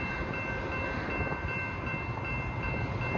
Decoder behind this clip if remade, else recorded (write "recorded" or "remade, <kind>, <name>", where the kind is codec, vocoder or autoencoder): recorded